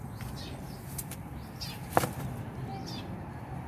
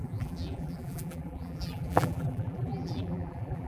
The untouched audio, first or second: first